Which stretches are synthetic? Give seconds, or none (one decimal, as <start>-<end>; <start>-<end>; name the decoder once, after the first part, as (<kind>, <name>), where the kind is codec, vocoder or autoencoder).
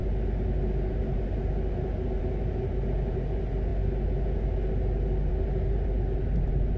none